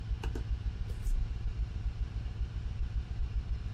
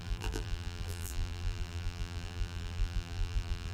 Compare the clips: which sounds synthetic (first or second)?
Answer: second